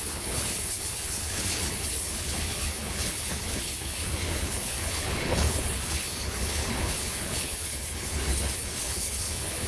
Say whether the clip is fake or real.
fake